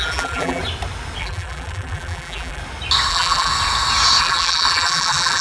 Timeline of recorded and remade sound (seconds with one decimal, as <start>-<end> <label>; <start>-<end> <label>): 0.0-0.6 remade; 0.6-1.2 recorded; 1.2-2.6 remade; 2.6-3.1 recorded; 3.1-3.5 remade; 3.5-4.2 recorded; 4.2-5.4 remade